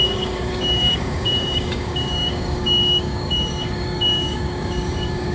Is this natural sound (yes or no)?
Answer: no